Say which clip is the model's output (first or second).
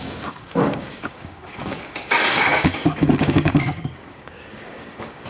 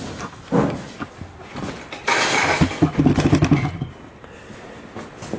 first